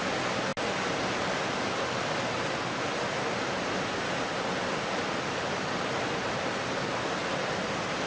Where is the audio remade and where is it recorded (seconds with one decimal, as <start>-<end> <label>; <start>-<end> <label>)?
0.0-8.1 recorded